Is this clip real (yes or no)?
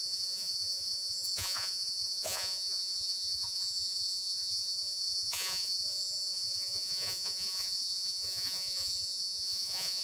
no